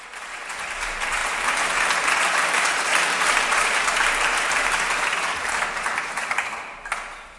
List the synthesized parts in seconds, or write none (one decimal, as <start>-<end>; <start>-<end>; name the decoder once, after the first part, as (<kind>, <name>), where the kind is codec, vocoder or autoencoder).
0.0-6.4 (vocoder, BigVGAN v2)